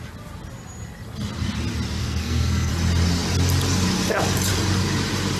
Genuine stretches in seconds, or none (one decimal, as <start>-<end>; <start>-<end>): 0.0-2.0; 2.7-5.4